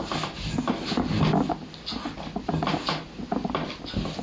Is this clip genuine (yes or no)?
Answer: yes